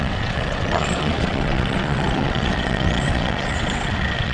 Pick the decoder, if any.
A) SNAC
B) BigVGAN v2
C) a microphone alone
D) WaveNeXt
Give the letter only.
D